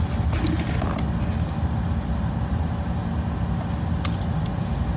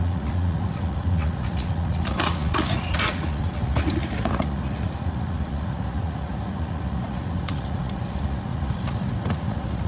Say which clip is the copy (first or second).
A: second